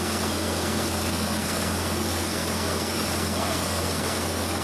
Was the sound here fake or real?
fake